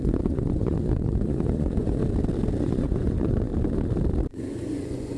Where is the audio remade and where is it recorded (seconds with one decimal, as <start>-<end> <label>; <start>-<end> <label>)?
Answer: 0.0-2.0 remade; 2.0-2.6 recorded; 2.6-3.5 remade; 3.5-4.3 recorded; 4.3-5.2 remade